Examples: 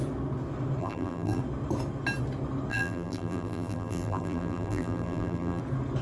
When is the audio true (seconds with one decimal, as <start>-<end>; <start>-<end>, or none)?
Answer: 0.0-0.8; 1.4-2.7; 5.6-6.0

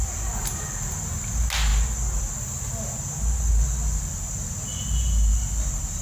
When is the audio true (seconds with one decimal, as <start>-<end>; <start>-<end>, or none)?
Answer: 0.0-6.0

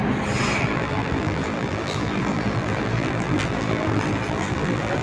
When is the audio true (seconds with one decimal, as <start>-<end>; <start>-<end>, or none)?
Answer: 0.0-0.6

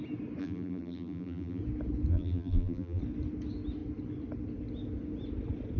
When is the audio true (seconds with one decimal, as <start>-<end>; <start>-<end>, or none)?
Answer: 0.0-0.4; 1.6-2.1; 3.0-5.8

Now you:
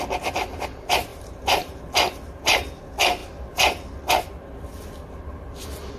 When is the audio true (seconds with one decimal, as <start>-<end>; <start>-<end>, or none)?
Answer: 0.0-1.1; 1.8-6.0